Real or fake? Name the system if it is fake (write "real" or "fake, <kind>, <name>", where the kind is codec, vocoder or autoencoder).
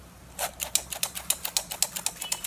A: real